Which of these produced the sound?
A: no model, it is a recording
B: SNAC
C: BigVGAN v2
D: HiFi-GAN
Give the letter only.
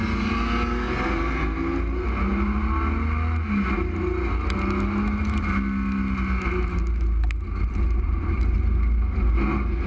A